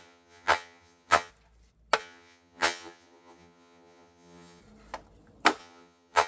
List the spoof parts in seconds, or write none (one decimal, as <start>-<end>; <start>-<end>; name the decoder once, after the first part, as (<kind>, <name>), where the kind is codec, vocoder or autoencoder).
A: 0.0-1.3 (vocoder, HiFi-GAN); 2.0-4.6; 5.6-6.3